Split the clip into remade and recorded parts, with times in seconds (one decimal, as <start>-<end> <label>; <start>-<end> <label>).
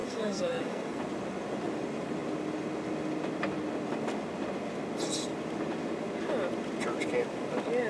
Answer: 0.0-1.0 remade; 1.0-7.9 recorded